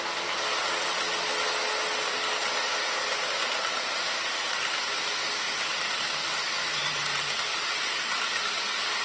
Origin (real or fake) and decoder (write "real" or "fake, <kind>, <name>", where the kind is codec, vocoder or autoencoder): real